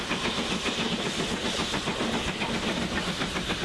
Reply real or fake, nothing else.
real